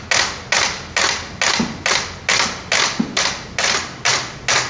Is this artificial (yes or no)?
no